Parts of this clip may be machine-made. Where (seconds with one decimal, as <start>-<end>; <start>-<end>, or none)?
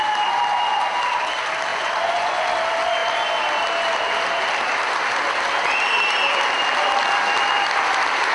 1.7-2.4